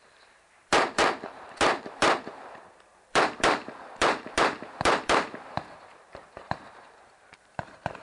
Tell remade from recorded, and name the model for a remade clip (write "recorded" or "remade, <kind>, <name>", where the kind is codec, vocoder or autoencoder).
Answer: remade, vocoder, BigVGAN v2